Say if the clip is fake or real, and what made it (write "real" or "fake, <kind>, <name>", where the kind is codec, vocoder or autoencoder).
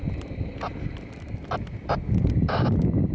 real